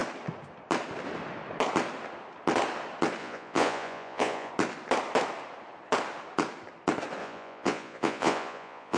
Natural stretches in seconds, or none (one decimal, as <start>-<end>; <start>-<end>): 0.0-3.2; 4.5-7.2